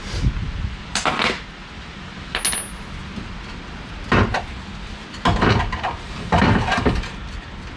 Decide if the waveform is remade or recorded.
recorded